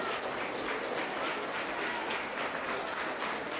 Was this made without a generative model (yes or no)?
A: yes